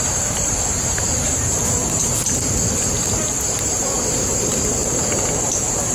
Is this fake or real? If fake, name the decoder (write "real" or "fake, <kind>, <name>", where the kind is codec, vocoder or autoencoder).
fake, vocoder, BigVGAN v2